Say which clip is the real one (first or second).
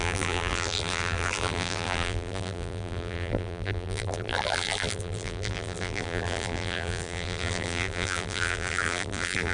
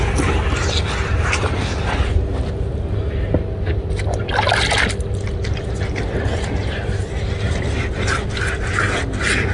second